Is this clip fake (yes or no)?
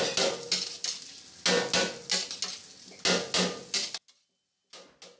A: no